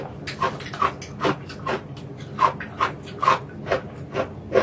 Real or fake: real